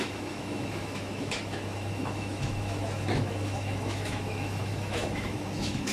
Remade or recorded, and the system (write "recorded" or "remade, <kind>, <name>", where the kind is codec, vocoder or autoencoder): remade, autoencoder, DAC-VAE